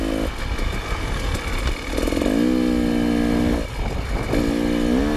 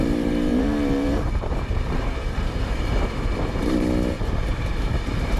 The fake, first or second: second